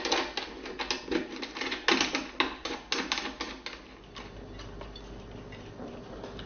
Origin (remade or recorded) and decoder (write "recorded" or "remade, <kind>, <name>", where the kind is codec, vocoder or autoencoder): recorded